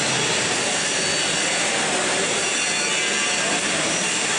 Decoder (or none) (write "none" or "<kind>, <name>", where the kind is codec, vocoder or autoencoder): none